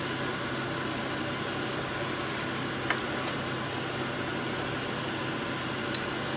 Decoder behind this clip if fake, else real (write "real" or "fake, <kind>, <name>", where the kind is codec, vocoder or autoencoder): real